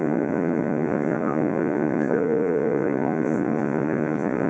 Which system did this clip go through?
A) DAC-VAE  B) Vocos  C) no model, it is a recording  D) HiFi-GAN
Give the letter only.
B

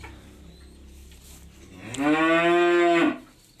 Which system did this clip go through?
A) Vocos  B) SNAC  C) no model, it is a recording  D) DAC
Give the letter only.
C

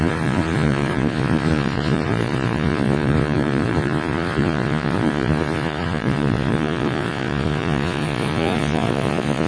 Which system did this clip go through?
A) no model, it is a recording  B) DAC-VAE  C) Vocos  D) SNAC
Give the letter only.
C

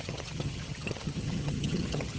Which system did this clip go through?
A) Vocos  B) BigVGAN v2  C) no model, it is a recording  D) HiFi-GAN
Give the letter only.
D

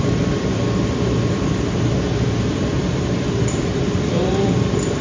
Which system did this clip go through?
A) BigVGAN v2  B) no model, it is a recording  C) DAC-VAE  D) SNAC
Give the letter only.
A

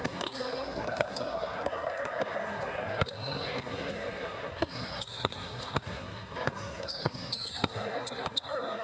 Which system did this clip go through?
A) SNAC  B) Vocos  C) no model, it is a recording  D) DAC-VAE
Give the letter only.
A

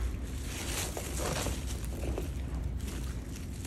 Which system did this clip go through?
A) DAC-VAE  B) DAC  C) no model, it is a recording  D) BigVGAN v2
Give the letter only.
C